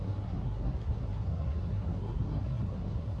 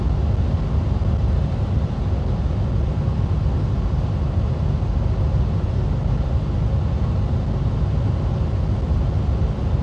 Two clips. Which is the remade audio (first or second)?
first